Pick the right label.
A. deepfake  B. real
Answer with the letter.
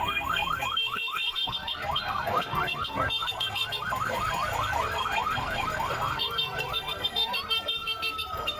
A